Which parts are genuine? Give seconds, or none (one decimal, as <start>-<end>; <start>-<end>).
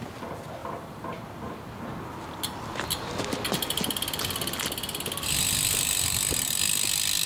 0.0-0.6; 1.1-7.3